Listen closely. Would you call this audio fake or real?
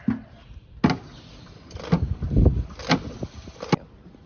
real